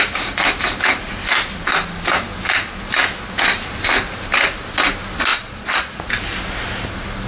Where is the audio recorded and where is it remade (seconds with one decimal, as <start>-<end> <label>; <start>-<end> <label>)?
0.0-5.3 recorded; 5.3-6.1 remade; 6.1-7.3 recorded